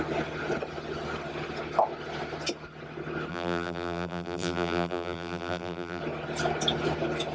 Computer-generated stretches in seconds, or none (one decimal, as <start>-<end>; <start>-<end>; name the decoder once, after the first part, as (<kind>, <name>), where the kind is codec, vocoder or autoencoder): 3.3-6.0 (vocoder, BigVGAN v2)